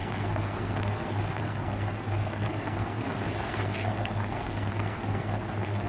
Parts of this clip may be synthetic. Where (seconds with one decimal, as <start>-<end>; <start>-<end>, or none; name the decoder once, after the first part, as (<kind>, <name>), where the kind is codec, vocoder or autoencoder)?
0.0-5.9 (codec, SNAC)